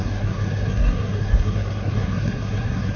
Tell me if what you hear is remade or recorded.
remade